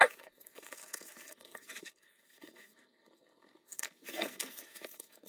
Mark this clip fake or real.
fake